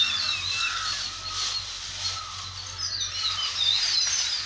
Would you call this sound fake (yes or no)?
no